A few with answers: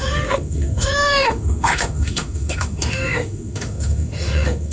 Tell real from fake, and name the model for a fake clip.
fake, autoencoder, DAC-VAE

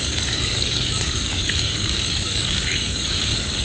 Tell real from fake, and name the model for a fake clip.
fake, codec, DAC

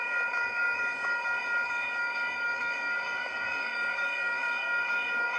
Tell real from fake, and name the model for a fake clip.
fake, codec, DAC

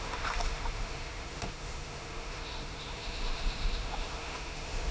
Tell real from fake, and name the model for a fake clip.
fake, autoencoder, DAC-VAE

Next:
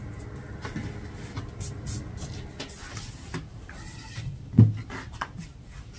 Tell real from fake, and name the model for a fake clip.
real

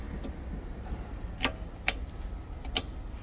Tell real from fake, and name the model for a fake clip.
real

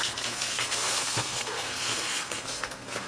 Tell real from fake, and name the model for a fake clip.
fake, codec, SNAC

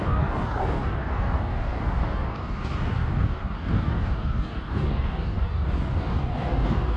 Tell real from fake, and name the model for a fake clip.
fake, codec, DAC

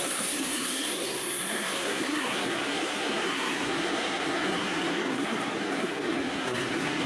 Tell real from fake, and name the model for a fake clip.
fake, codec, SNAC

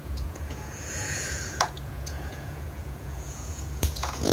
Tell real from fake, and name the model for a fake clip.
fake, vocoder, Vocos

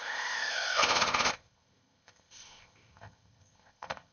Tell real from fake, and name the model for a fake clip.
fake, codec, ZipCodec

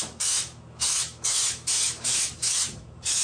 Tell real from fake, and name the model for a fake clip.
fake, autoencoder, DAC-VAE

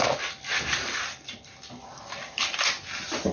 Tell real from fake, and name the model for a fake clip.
real